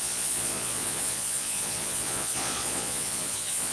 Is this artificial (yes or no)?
yes